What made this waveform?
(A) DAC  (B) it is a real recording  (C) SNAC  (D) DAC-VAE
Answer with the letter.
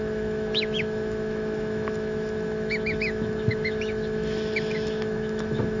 D